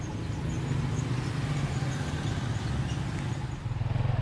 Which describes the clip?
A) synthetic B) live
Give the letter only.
B